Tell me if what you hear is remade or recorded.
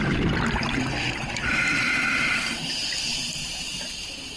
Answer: recorded